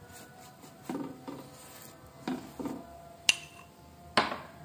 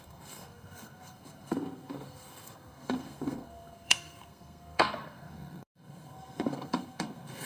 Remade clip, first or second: second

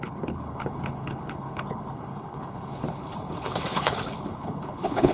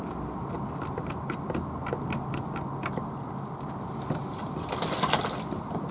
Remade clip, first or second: first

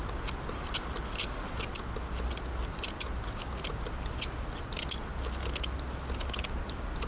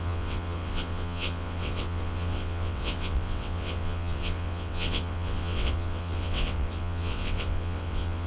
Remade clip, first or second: second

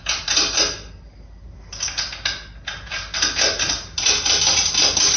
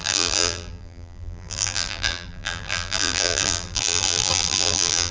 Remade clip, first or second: second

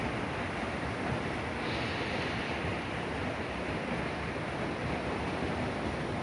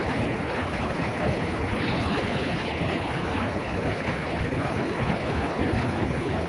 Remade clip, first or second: second